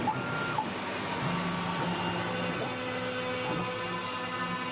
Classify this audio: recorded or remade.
recorded